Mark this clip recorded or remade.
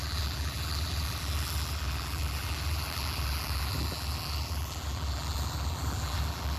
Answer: remade